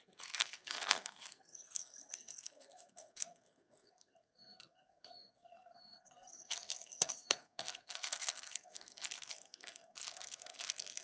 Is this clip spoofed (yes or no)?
yes